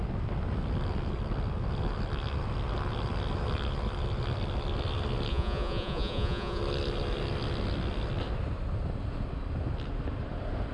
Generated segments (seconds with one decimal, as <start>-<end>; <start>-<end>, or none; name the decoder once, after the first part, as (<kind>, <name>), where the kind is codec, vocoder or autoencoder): 5.3-6.6 (vocoder, Vocos)